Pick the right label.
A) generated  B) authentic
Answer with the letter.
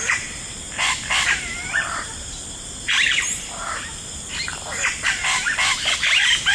A